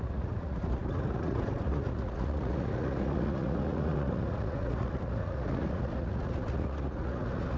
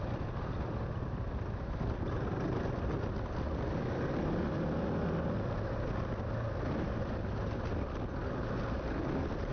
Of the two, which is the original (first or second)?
second